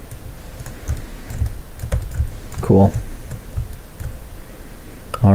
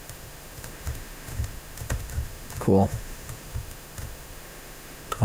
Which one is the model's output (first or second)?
second